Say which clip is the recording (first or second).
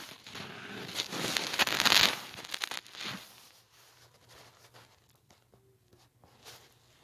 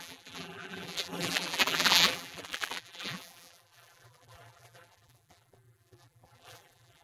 first